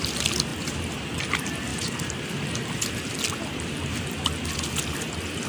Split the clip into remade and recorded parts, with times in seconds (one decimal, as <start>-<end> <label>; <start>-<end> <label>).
0.0-5.5 recorded

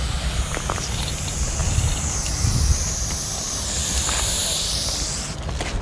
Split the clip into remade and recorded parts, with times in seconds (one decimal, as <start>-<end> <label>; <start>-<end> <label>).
0.0-1.6 recorded; 1.6-2.2 remade; 2.2-3.8 recorded; 3.8-5.1 remade; 5.1-5.8 recorded

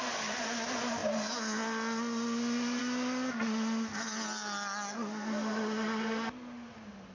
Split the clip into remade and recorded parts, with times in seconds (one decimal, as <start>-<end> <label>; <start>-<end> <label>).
0.0-7.1 recorded

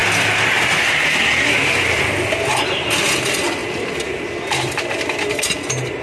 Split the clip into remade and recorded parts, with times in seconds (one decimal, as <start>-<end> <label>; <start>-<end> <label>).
0.0-6.0 recorded

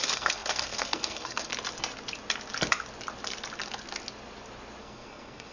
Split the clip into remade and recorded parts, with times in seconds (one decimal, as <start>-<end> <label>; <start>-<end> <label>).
0.0-1.5 remade; 1.5-4.8 recorded; 4.8-5.5 remade

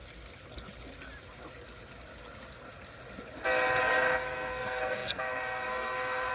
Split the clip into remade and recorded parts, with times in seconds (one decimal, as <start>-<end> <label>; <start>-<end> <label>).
0.0-3.8 recorded; 3.8-6.3 remade

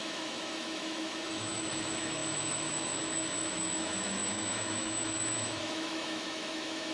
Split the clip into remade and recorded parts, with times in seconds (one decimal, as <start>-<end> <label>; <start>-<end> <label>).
0.0-6.9 remade